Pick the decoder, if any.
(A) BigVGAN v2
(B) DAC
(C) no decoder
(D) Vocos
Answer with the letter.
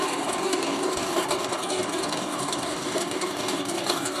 B